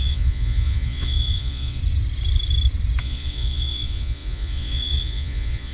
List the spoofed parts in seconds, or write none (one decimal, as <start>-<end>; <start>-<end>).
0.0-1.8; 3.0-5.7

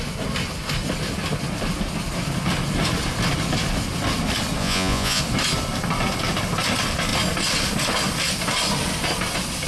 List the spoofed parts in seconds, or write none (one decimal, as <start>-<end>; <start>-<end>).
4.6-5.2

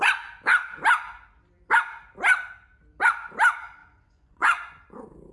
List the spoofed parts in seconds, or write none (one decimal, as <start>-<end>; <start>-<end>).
3.8-5.3

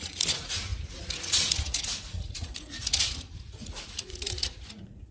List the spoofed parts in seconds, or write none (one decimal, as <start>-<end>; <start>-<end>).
0.0-5.1